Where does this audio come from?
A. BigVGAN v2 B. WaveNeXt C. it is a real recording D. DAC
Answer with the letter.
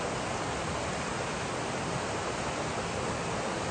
C